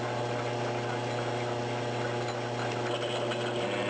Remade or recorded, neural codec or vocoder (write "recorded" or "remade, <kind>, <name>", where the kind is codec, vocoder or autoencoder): recorded